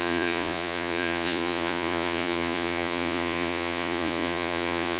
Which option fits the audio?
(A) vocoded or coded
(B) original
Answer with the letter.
A